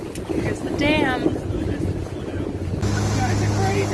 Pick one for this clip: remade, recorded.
recorded